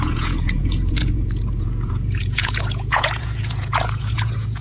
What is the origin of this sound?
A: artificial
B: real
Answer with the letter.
A